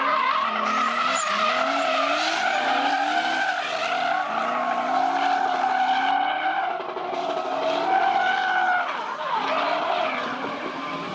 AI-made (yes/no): no